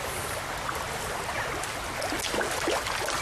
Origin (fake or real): real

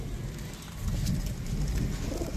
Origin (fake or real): real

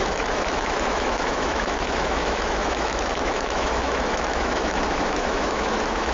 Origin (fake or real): fake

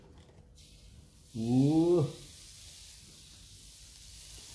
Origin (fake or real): real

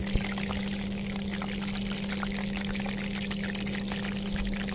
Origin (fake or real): real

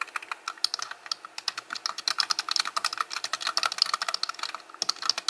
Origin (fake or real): real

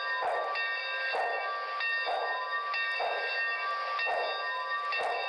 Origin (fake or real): real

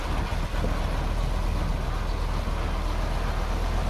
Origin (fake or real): real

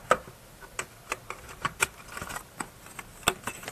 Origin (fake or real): real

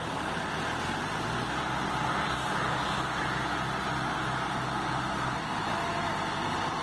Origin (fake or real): real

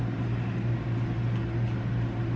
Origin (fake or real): real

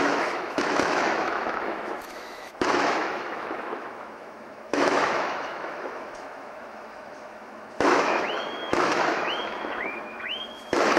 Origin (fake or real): fake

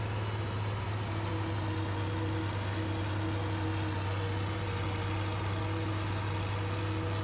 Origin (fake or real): real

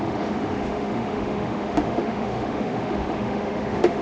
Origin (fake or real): fake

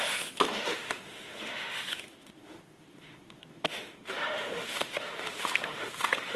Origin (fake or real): fake